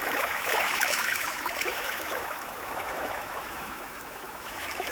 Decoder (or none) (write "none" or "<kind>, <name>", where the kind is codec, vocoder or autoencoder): autoencoder, DAC-VAE